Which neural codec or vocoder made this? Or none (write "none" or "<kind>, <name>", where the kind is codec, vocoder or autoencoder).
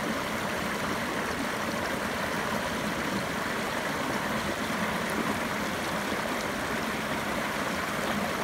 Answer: vocoder, BigVGAN v2